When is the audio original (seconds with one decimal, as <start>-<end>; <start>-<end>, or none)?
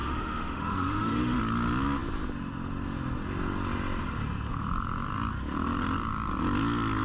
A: 1.4-7.0